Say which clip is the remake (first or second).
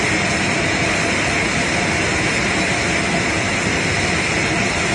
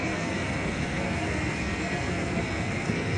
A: second